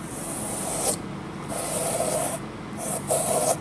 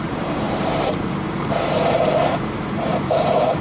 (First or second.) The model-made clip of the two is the second